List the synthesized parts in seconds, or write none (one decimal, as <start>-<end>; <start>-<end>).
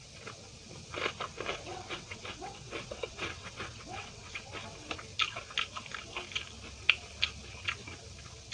1.7-4.5